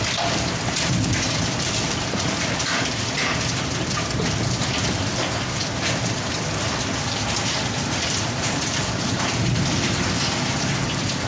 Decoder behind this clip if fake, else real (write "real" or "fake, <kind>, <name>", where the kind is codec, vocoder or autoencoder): fake, vocoder, BigVGAN v2